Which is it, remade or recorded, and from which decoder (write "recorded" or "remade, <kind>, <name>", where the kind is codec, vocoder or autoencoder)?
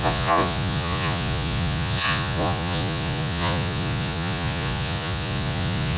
remade, vocoder, Vocos